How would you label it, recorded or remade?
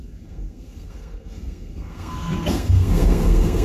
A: remade